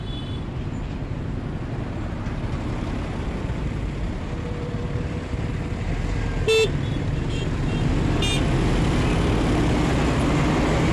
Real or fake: real